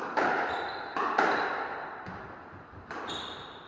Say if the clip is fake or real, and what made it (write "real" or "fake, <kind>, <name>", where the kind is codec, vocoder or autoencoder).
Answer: fake, vocoder, BigVGAN v2